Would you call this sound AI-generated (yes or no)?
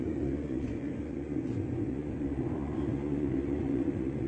yes